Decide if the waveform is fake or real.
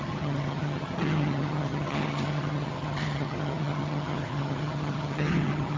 fake